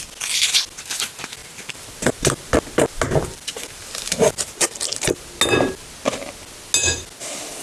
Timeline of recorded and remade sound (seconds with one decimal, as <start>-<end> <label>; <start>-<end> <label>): 0.0-1.4 recorded; 1.4-5.3 remade; 5.3-7.6 recorded